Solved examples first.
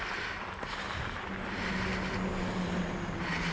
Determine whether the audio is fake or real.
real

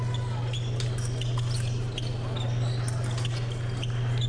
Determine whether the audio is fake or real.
real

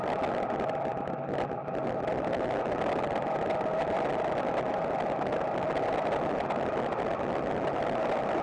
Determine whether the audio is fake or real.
real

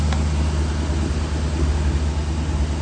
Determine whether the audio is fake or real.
real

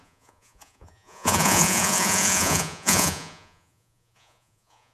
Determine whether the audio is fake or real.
fake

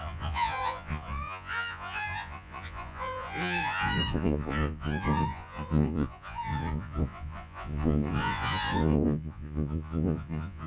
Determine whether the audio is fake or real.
fake